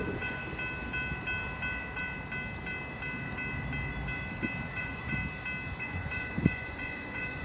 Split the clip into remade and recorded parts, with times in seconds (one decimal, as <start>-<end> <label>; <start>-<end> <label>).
0.0-0.4 remade; 0.4-4.8 recorded; 4.8-5.2 remade; 5.2-5.8 recorded; 5.8-7.4 remade